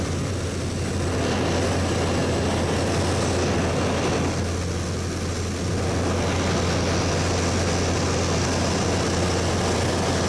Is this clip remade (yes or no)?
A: no